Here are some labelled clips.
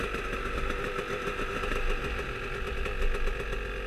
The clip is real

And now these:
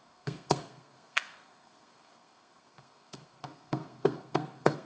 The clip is fake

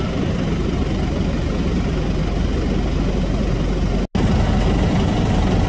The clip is real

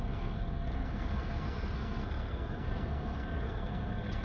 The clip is fake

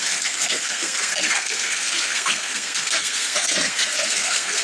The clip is fake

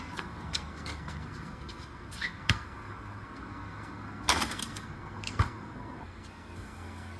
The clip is fake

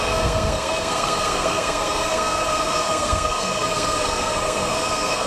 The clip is fake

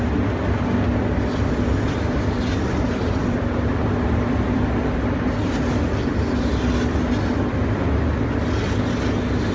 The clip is real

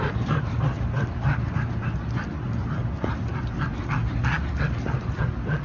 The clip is real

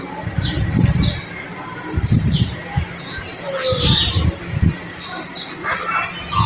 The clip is real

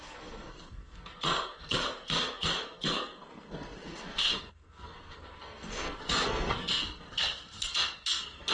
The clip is fake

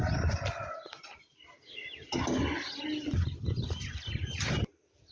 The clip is real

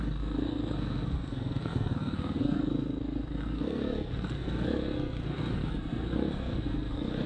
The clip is fake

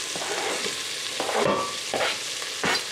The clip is real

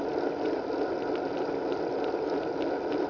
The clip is real